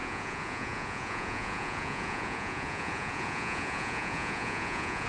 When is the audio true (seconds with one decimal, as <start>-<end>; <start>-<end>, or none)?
none